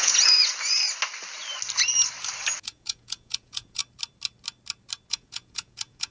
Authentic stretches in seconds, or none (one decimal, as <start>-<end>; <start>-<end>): 0.4-2.6; 3.8-5.1